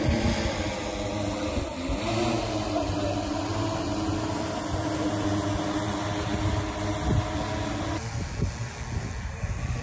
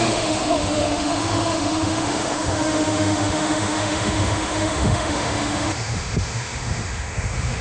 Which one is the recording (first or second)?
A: first